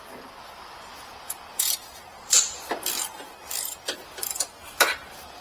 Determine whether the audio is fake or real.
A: fake